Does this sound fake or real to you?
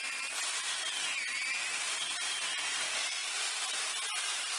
real